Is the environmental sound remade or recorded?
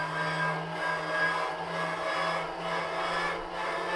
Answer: recorded